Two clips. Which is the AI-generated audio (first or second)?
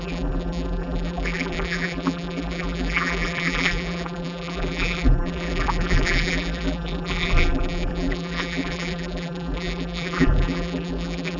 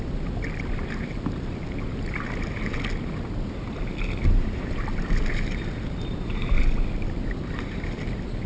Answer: first